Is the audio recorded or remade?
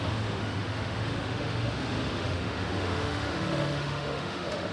remade